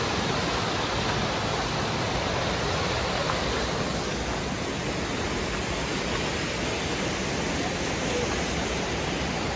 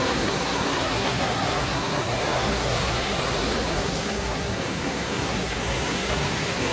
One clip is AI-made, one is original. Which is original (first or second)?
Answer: first